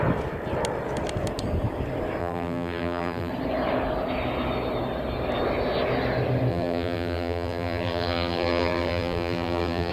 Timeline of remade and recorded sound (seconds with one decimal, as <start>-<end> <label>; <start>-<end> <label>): 0.0-2.2 recorded; 2.2-3.3 remade; 3.3-6.5 recorded; 6.5-9.9 remade